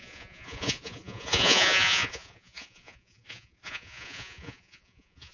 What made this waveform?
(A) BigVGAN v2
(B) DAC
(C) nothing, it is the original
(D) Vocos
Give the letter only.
D